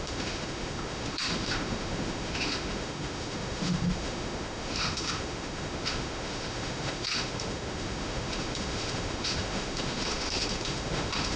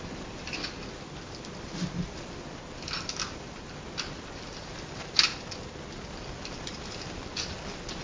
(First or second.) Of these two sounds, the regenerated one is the first